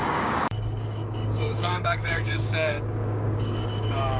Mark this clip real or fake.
fake